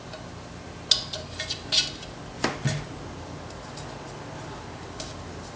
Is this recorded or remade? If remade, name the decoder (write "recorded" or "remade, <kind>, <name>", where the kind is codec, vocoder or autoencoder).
recorded